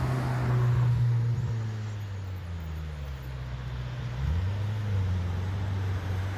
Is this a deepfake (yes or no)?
no